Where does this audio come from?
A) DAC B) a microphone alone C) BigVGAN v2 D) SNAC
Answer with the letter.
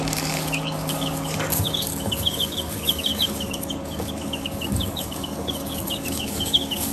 A